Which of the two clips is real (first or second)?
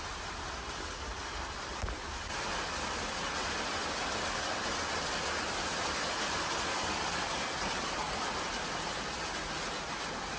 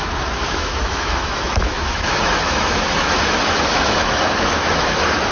first